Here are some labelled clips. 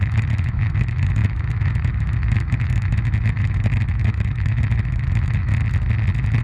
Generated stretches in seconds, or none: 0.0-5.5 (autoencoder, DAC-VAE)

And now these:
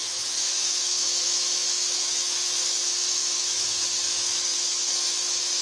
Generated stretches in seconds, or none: 0.0-5.6 (autoencoder, DAC-VAE)

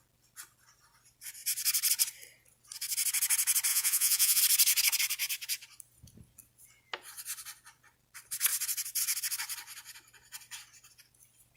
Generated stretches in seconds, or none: 3.7-4.4 (vocoder, Vocos)

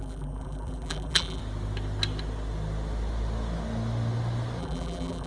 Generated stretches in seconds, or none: 0.0-1.4 (vocoder, BigVGAN v2); 4.6-5.3

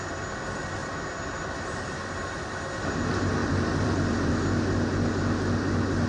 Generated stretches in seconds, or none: 3.4-4.3 (vocoder, BigVGAN v2)